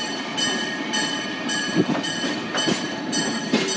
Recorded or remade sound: remade